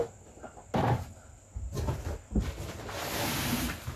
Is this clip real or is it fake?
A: real